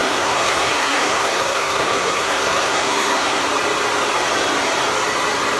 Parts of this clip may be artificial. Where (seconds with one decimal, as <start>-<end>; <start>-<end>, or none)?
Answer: 0.0-3.4